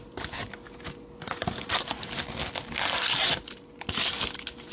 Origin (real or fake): real